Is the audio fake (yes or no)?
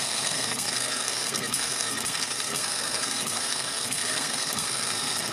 yes